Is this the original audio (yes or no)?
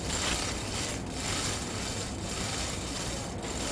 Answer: yes